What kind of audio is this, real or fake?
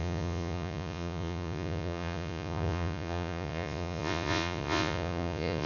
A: fake